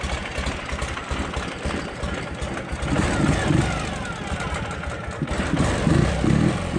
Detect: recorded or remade recorded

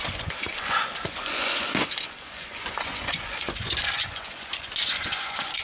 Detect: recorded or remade remade